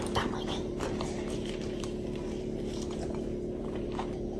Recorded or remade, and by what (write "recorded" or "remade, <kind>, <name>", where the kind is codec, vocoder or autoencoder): remade, vocoder, BigVGAN v2